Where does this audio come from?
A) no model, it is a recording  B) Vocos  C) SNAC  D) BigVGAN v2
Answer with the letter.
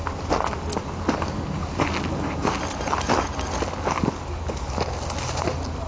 A